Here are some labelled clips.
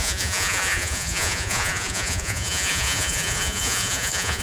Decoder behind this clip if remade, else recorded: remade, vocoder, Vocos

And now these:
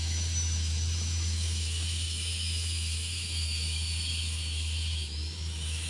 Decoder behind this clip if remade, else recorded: remade, autoencoder, DAC-VAE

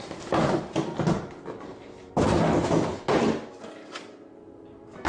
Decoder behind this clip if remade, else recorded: recorded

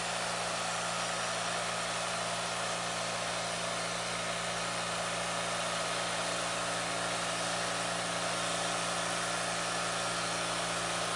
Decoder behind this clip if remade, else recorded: recorded